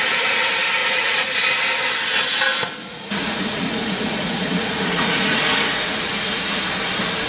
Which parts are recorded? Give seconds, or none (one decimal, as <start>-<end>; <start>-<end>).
0.0-0.8; 1.4-2.9; 6.5-7.3